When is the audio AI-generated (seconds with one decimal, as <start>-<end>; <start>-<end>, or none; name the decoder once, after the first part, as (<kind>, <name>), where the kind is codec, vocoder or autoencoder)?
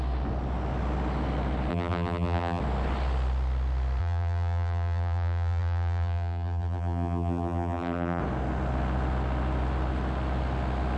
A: 1.7-2.6 (vocoder, BigVGAN v2); 4.0-8.2